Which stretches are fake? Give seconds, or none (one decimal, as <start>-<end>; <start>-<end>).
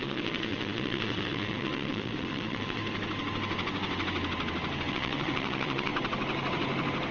0.0-2.8; 4.9-5.9